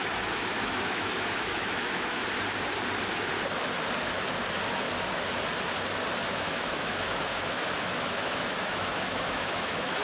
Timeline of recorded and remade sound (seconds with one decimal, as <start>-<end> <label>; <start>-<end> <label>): 0.0-2.2 remade; 2.2-6.3 recorded; 6.3-10.0 remade